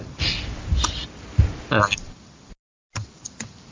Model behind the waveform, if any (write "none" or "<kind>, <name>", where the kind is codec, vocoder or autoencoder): none